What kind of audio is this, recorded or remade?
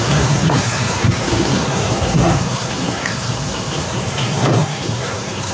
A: remade